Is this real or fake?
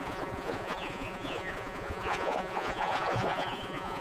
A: fake